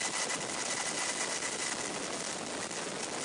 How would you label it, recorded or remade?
recorded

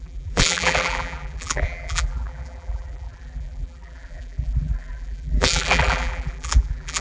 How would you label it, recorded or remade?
remade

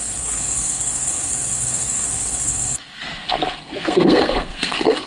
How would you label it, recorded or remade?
remade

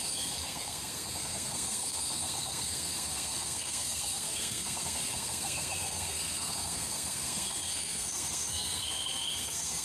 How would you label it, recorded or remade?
remade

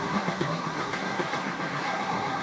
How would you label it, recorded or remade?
remade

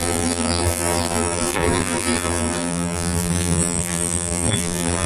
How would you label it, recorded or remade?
remade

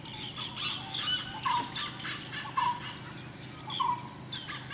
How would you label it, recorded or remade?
recorded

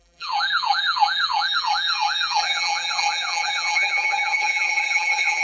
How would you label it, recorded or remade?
remade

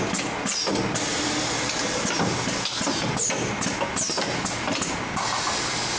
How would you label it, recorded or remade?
recorded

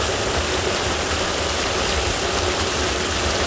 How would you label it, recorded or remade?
recorded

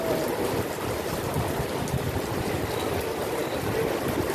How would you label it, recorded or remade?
remade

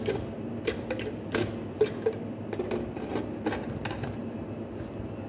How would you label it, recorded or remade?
recorded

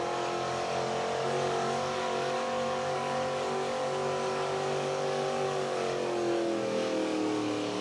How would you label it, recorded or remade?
remade